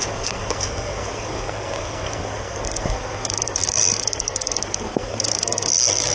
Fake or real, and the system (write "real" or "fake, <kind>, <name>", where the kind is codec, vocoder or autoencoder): fake, codec, SNAC